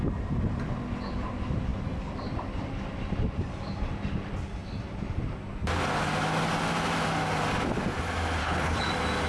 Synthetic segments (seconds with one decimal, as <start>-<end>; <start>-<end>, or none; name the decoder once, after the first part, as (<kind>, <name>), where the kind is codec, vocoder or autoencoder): 8.4-8.9 (codec, HILCodec)